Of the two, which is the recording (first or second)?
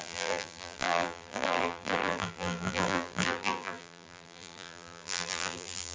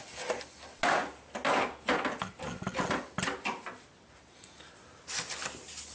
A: second